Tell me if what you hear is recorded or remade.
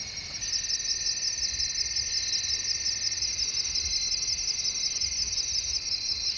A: recorded